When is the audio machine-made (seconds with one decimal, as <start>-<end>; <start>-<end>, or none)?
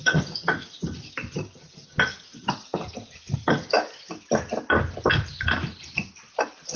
none